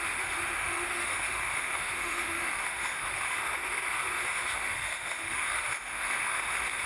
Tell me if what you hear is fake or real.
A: fake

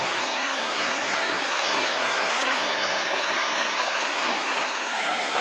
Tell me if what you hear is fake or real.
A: fake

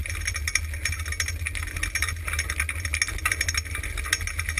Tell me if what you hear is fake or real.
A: real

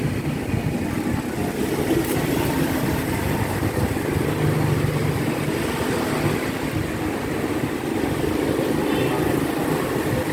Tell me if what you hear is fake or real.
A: real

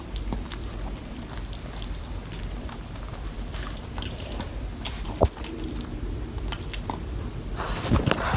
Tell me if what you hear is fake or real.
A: fake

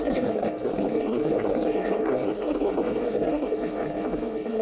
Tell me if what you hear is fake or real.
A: fake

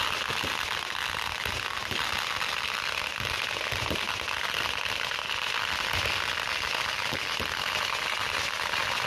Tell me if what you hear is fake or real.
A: real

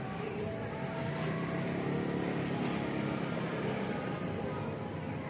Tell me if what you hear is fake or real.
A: real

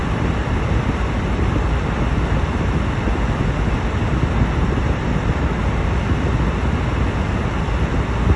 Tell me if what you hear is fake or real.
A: real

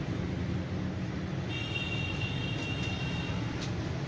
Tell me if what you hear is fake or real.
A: real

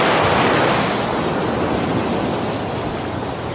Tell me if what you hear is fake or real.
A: real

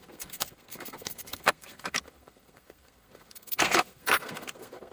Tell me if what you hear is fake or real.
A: fake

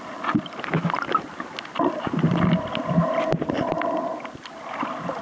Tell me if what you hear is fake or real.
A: real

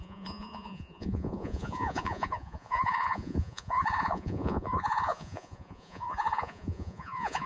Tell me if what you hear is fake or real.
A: fake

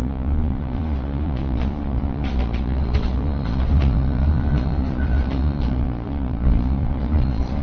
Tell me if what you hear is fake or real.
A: fake